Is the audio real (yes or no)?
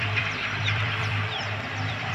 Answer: no